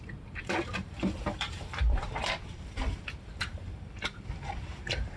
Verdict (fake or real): fake